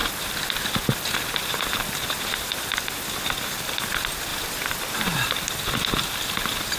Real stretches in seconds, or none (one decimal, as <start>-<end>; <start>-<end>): 0.7-4.3; 5.3-6.8